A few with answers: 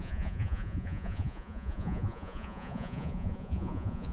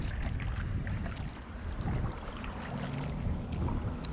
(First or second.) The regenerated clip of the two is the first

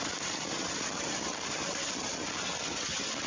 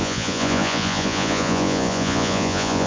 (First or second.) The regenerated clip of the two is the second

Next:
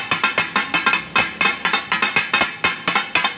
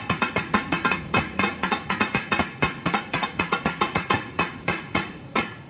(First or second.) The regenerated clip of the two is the second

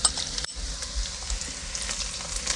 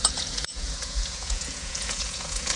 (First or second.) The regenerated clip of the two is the second